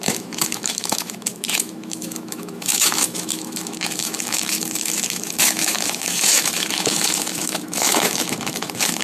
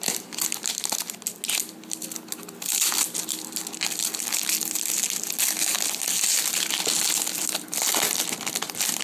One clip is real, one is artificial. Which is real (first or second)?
second